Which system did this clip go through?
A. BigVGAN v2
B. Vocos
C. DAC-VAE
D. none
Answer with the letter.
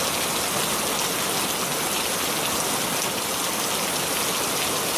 D